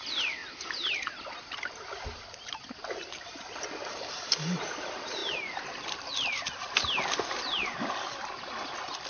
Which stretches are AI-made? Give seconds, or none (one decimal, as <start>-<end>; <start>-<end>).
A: none